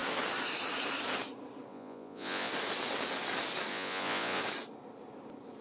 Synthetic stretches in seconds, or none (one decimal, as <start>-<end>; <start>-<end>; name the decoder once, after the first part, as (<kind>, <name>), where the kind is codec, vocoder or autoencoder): 1.7-2.5 (vocoder, Vocos); 3.7-4.4